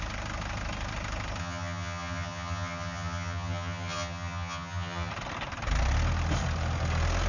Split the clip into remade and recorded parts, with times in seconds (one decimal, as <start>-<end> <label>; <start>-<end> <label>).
0.0-1.4 recorded; 1.4-5.1 remade; 5.1-7.3 recorded

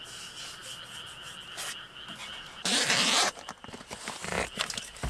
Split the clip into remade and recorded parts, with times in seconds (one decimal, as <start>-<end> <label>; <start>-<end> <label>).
0.0-2.2 recorded; 2.2-3.5 remade; 3.5-5.1 recorded

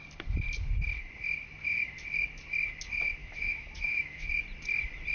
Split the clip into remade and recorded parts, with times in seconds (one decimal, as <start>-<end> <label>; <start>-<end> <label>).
0.0-3.2 recorded; 3.2-4.3 remade; 4.3-5.1 recorded

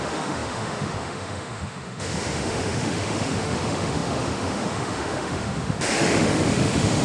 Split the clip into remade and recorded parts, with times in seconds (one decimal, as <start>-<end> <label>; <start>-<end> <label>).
0.0-7.0 remade

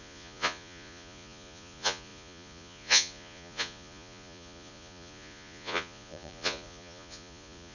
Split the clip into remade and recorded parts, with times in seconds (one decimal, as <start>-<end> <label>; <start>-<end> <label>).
0.0-7.7 remade